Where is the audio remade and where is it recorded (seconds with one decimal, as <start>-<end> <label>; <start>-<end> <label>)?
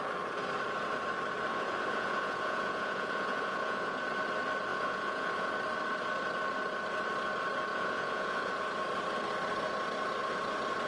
0.0-1.5 recorded; 1.5-4.0 remade; 4.0-4.7 recorded; 4.7-5.5 remade; 5.5-7.7 recorded; 7.7-8.5 remade; 8.5-10.9 recorded